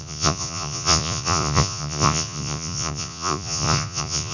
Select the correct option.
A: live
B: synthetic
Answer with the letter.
B